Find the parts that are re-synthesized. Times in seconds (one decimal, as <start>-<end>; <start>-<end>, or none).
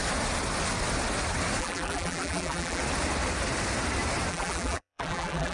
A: 1.6-2.8; 4.3-5.5